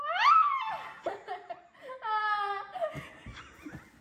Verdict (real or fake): real